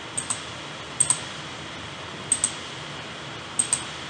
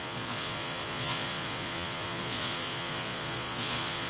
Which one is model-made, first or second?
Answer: second